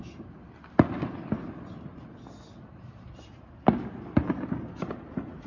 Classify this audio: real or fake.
real